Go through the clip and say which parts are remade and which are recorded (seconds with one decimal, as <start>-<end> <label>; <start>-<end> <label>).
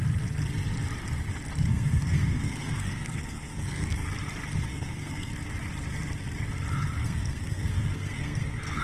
0.0-1.7 recorded; 1.7-4.1 remade; 4.1-4.7 recorded; 4.7-5.3 remade; 5.3-7.0 recorded; 7.0-8.8 remade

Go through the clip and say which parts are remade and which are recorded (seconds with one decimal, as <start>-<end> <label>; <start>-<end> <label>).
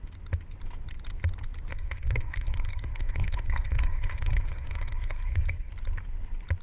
0.0-1.7 recorded; 1.7-5.7 remade; 5.7-6.6 recorded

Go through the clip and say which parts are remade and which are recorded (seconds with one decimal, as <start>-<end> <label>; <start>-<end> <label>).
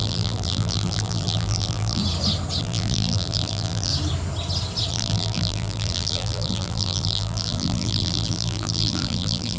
0.0-2.0 remade; 2.0-2.6 recorded; 2.6-3.9 remade; 3.9-4.9 recorded; 4.9-9.6 remade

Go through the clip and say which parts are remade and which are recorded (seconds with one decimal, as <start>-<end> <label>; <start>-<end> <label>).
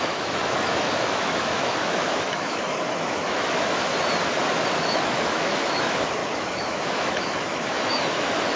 0.0-3.9 remade; 3.9-4.8 recorded; 4.8-8.6 remade